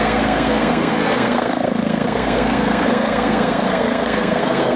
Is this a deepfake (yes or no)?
yes